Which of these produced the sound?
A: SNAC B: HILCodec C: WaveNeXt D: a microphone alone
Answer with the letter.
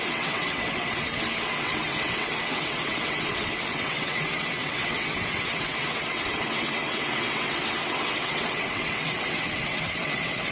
C